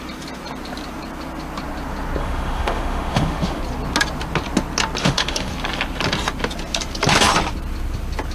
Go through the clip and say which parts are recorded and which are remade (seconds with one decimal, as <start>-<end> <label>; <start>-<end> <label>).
0.0-2.2 recorded; 2.2-3.6 remade; 3.6-5.0 recorded; 5.0-5.5 remade; 5.5-8.3 recorded